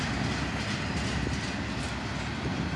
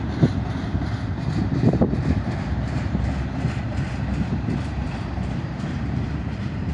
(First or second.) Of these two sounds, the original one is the first